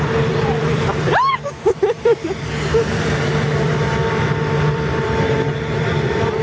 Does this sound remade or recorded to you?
remade